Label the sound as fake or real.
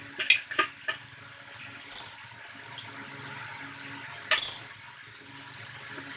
real